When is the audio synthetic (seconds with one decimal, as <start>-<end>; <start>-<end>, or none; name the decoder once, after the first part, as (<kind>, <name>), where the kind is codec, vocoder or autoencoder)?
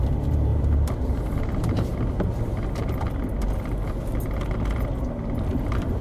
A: 0.0-1.9 (vocoder, BigVGAN v2); 5.5-6.0